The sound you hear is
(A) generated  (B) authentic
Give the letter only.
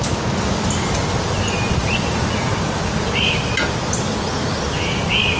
B